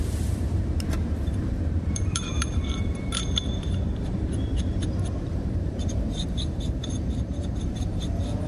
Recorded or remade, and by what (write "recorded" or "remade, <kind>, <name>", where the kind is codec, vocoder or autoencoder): remade, vocoder, BigVGAN v2